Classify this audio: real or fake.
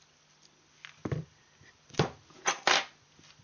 real